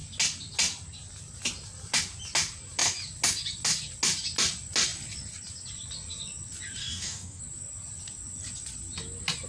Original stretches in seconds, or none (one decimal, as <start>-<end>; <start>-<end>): 0.0-6.8; 7.4-9.5